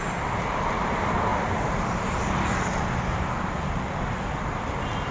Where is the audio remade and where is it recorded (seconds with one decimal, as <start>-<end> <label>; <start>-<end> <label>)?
0.0-5.1 recorded